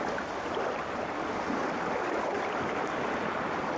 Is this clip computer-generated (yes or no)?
no